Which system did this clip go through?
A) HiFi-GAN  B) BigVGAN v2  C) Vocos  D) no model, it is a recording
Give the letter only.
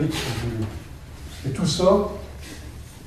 D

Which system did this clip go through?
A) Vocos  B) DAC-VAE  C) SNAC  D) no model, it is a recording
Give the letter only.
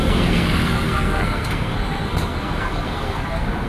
C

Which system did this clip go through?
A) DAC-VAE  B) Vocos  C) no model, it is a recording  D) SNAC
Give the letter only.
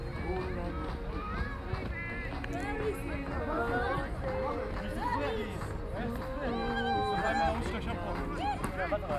C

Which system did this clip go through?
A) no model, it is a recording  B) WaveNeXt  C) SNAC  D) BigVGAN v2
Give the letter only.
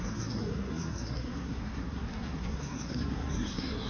C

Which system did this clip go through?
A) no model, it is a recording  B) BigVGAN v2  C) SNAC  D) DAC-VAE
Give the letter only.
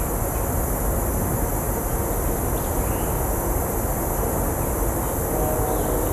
A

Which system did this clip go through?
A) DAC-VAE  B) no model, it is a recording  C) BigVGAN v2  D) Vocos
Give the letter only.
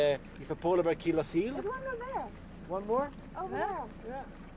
B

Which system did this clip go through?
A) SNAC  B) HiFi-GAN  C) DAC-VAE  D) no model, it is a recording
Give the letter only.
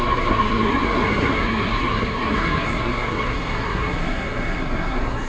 A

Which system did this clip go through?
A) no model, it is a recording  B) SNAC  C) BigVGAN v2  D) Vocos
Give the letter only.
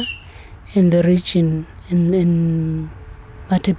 A